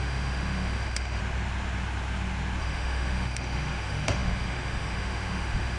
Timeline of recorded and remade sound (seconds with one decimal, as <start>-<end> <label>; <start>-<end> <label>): 0.0-1.2 remade; 1.2-2.6 recorded; 2.6-5.8 remade